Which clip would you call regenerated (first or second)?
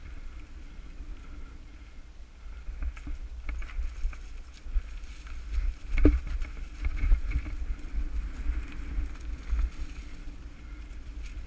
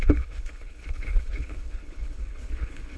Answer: second